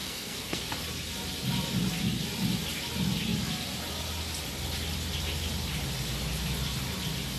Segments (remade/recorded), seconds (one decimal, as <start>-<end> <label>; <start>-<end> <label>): 0.0-0.7 remade; 0.7-7.4 recorded